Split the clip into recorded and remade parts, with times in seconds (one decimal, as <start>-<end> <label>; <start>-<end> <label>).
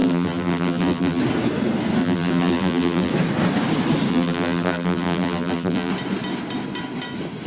0.0-1.2 remade; 1.2-2.0 recorded; 2.0-3.1 remade; 3.1-4.1 recorded; 4.1-5.9 remade; 5.9-7.5 recorded